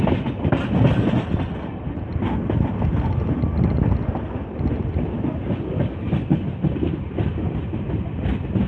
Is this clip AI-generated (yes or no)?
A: no